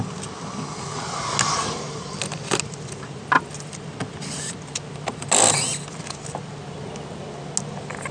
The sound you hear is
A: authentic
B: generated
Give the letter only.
A